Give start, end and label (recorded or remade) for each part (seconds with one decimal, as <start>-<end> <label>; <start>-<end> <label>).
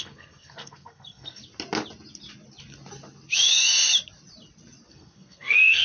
0.0-1.4 remade; 1.4-4.9 recorded; 4.9-5.8 remade